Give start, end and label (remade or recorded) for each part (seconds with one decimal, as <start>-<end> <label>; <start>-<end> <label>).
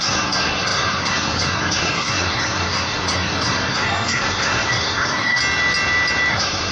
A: 0.0-5.4 remade; 5.4-6.3 recorded; 6.3-6.7 remade